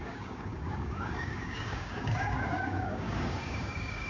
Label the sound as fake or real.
fake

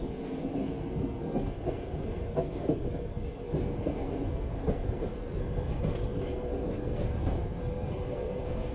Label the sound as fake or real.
fake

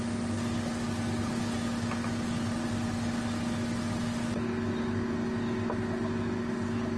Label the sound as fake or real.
real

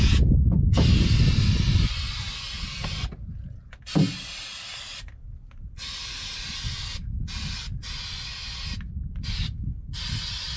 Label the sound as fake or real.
real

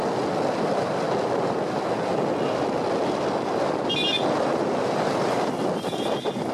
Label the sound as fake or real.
real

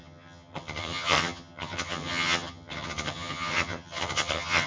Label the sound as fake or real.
fake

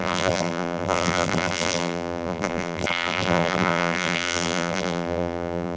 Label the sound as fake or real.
fake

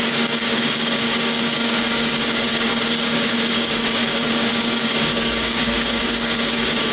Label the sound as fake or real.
fake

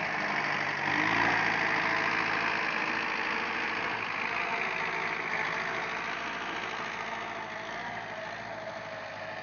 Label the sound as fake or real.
real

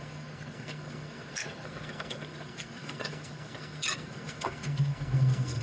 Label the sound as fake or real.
fake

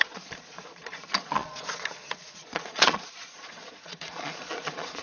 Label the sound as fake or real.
fake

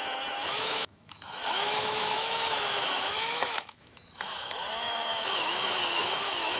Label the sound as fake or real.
fake